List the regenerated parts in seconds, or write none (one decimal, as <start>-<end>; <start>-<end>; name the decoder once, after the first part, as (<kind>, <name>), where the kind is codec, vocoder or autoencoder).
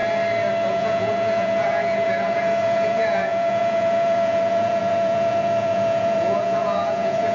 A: 0.7-7.3 (vocoder, Vocos)